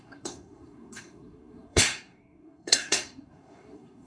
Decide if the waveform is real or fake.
fake